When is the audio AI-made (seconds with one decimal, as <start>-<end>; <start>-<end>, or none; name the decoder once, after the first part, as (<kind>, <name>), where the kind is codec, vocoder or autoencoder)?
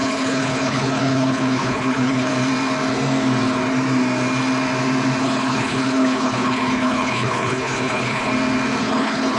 0.0-2.3 (codec, HILCodec); 5.2-8.3; 8.8-9.4